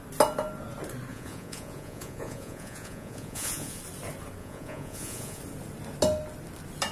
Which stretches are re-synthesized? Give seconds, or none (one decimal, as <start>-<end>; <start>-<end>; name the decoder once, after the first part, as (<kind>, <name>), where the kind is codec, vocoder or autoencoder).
1.1-3.8 (vocoder, Vocos); 4.4-5.4